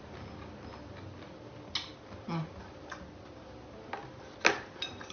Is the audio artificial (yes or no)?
no